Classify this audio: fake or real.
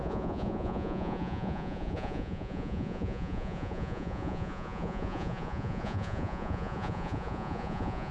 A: fake